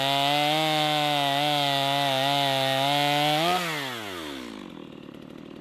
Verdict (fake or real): real